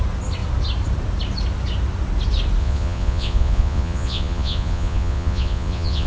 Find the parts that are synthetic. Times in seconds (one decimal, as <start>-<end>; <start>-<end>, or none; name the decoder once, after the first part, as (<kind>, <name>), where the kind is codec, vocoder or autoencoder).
2.6-6.1 (vocoder, Vocos)